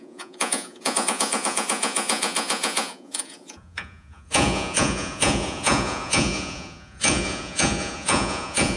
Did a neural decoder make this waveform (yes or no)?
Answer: yes